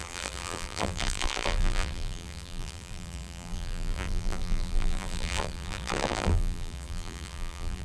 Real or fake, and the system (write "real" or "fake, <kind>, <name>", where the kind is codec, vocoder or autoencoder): fake, vocoder, BigVGAN v2